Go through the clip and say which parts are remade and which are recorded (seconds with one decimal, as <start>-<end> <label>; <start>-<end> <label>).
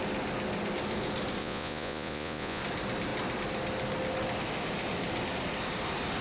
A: 0.0-1.4 recorded; 1.4-2.6 remade; 2.6-6.2 recorded